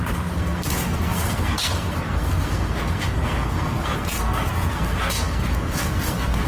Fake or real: fake